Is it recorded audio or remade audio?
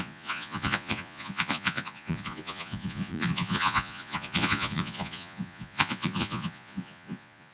remade